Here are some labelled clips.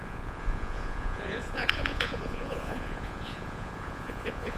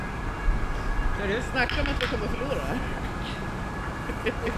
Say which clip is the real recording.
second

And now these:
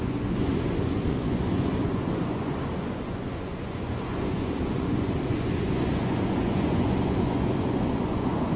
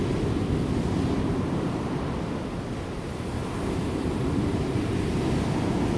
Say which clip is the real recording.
second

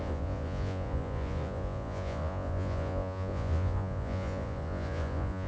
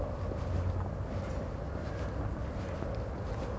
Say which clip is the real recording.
second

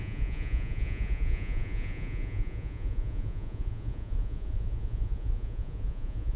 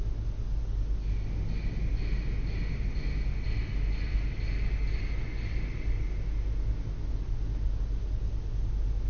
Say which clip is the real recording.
second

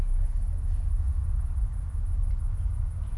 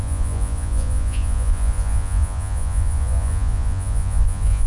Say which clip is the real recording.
first